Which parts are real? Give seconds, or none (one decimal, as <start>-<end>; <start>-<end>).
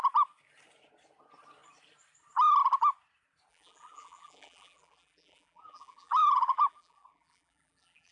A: 0.0-3.5